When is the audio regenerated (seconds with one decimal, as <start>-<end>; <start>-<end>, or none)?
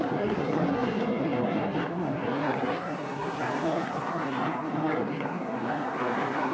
0.0-6.5